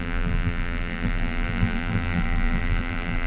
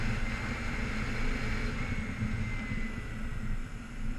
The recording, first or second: second